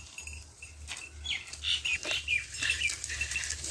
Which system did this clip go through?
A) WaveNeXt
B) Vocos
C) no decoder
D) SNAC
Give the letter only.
C